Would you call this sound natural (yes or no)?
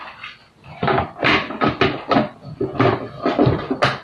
yes